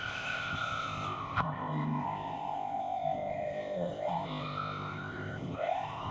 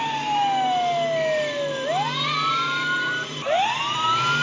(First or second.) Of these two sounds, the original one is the second